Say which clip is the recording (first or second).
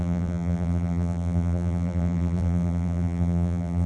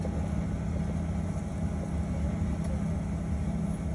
second